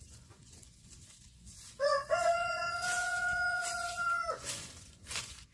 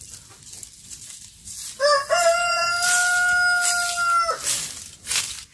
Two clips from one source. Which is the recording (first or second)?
second